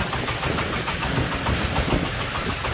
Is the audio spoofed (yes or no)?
no